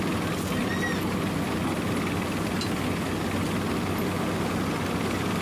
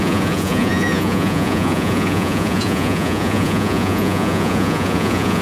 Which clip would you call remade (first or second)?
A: second